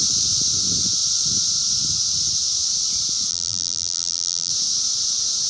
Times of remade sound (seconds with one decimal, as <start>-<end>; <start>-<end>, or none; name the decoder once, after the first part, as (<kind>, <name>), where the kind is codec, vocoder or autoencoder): 3.3-4.5 (vocoder, BigVGAN v2)